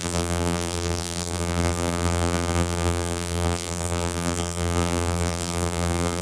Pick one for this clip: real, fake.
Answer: fake